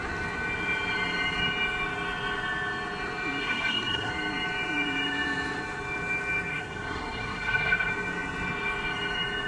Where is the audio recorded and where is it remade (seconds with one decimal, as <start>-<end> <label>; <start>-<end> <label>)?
0.0-3.4 recorded; 3.4-4.1 remade; 4.1-6.5 recorded; 6.5-7.9 remade; 7.9-9.5 recorded